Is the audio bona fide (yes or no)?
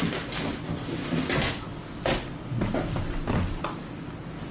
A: yes